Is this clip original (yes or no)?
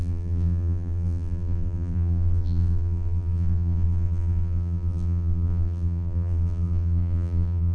no